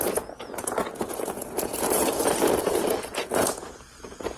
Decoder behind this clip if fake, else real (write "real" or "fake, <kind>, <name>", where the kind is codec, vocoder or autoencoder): fake, vocoder, Vocos